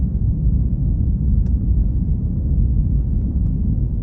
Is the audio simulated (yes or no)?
yes